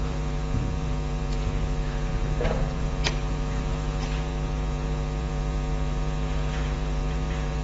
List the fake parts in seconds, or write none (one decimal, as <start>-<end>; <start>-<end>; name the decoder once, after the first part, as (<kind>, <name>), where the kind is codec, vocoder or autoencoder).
0.0-7.6 (vocoder, Vocos)